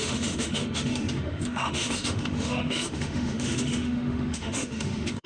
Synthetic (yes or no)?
yes